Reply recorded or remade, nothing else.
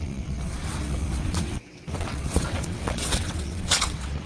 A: remade